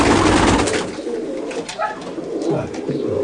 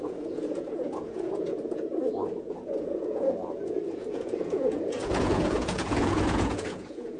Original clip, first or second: first